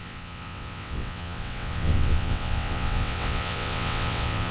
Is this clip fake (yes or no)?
yes